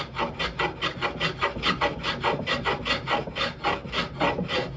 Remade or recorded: recorded